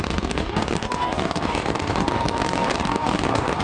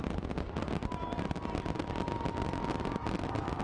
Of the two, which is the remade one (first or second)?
first